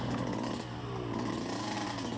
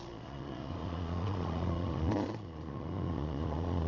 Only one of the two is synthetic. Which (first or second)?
second